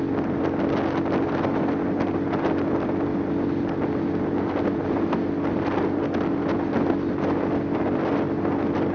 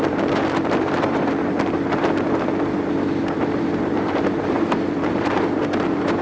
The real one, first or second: first